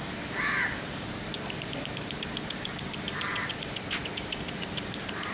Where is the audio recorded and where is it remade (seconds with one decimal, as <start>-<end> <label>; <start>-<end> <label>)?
0.0-1.3 remade; 1.3-1.8 recorded; 1.8-3.3 remade; 3.3-4.1 recorded; 4.1-5.3 remade